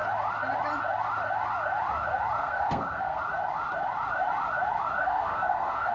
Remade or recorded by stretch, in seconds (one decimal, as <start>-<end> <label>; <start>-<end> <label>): 0.0-2.4 recorded; 2.4-3.2 remade; 3.2-5.0 recorded; 5.0-5.9 remade